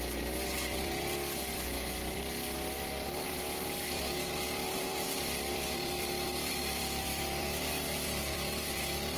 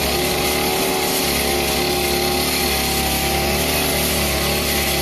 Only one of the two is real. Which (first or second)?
second